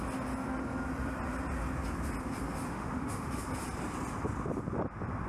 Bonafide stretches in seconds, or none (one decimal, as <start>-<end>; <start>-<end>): 0.0-2.7; 3.3-5.3